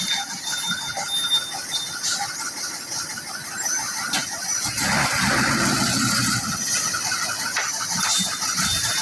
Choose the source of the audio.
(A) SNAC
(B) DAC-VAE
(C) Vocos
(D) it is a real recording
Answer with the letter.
D